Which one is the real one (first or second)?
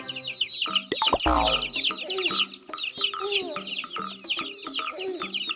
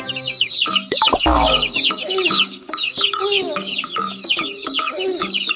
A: first